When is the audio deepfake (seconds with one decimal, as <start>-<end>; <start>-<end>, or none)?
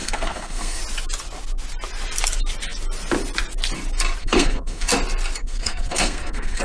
0.0-0.8; 4.2-4.9; 5.4-6.6